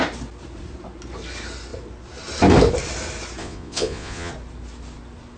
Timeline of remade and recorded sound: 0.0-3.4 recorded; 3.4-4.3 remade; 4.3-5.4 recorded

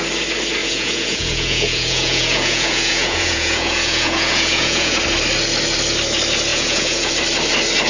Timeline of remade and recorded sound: 0.0-0.6 recorded; 0.6-5.0 remade; 5.0-6.5 recorded; 6.5-7.1 remade; 7.1-7.9 recorded

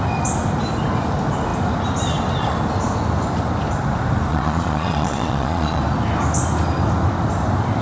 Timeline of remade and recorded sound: 0.0-4.3 recorded; 4.3-5.8 remade; 5.8-7.8 recorded

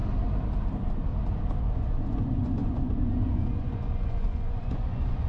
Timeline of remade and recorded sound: 0.0-1.6 recorded; 1.6-5.3 remade

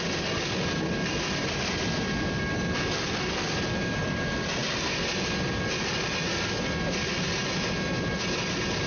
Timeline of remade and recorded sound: 0.0-8.9 recorded

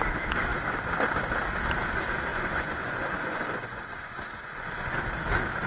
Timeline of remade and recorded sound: 0.0-2.3 recorded; 2.3-5.0 remade; 5.0-5.7 recorded

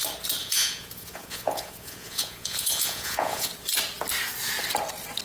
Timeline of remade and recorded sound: 0.0-0.4 recorded; 0.4-3.5 remade; 3.5-5.2 recorded

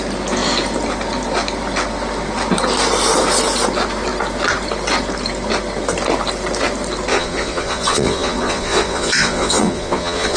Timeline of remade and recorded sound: 0.0-7.1 recorded; 7.1-10.4 remade